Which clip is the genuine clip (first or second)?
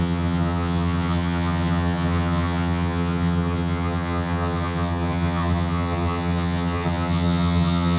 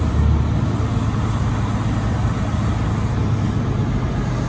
second